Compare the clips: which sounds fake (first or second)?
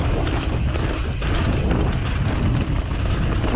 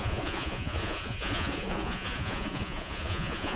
second